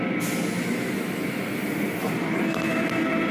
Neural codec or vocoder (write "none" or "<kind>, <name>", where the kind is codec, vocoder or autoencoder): none